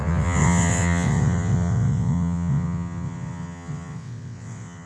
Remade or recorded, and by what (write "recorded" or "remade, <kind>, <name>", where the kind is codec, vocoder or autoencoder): remade, vocoder, WaveNeXt